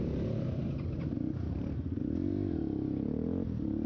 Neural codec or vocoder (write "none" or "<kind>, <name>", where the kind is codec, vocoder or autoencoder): none